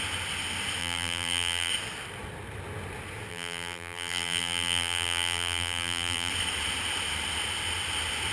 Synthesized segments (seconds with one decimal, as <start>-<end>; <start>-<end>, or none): 0.8-1.7; 3.3-6.3